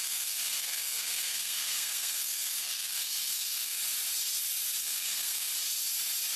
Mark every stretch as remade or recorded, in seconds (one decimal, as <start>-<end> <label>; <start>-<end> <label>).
0.0-3.8 remade; 3.8-4.8 recorded; 4.8-5.5 remade; 5.5-6.4 recorded